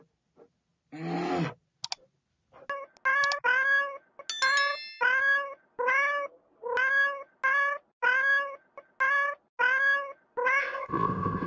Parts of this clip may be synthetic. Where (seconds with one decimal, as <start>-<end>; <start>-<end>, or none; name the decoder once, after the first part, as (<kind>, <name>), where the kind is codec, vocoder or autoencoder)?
10.6-11.5 (codec, ZipCodec)